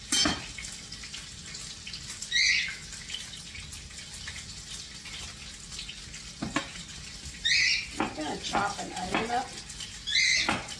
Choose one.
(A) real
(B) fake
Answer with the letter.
A